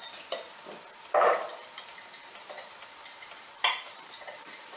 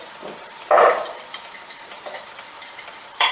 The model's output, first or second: second